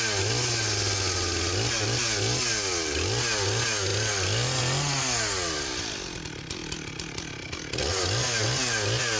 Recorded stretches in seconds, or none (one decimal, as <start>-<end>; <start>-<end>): 0.0-9.2